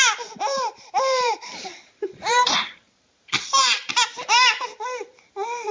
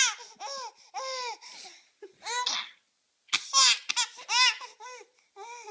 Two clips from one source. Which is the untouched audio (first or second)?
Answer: second